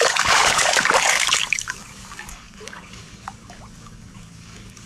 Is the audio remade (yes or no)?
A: yes